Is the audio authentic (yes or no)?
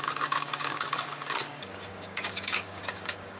no